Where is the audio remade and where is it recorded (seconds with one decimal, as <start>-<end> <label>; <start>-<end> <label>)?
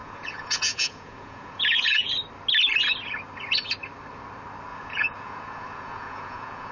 0.0-2.1 remade; 2.1-4.7 recorded; 4.7-6.7 remade